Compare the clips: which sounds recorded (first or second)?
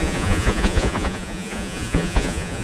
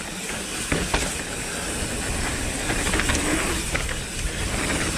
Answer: second